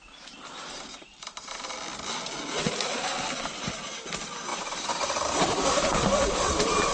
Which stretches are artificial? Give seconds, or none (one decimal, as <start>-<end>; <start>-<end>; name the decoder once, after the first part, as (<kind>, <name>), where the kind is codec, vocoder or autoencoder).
1.1-1.7 (vocoder, BigVGAN v2); 4.5-5.1